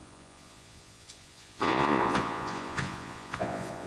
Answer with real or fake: fake